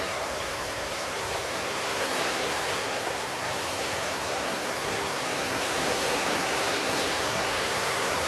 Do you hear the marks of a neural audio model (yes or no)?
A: yes